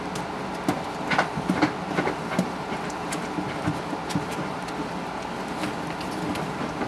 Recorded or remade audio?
recorded